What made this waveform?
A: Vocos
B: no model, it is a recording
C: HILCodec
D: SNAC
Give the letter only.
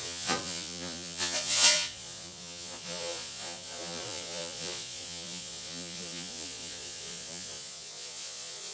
A